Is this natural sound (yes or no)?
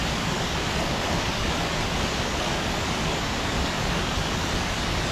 no